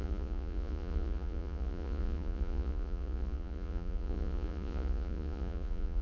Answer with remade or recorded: remade